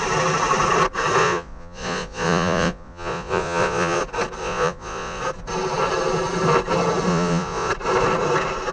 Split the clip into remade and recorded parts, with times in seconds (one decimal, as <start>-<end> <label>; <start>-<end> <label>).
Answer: 0.0-1.2 recorded; 1.2-4.0 remade; 4.0-4.4 recorded; 4.4-5.2 remade; 5.2-7.1 recorded; 7.1-7.7 remade; 7.7-8.7 recorded